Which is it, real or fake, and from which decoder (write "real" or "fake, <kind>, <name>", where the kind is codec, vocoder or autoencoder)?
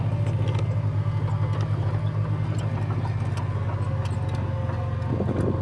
real